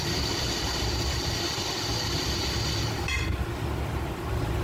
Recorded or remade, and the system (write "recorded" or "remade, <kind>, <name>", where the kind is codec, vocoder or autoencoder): recorded